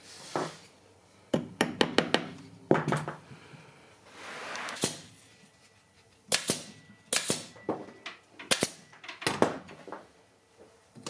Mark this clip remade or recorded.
recorded